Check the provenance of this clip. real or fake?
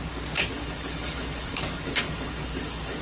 fake